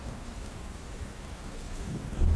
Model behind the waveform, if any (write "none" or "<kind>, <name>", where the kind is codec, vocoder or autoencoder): codec, DAC